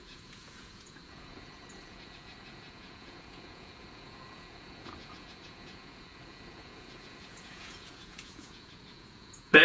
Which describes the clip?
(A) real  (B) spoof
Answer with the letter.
B